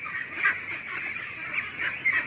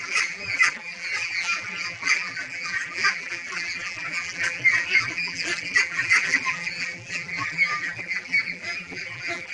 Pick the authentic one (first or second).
first